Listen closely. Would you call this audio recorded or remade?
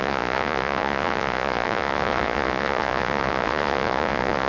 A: remade